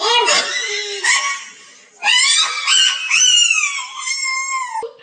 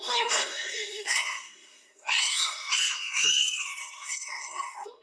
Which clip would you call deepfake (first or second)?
second